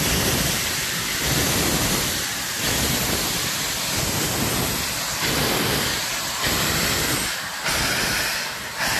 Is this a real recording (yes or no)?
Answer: yes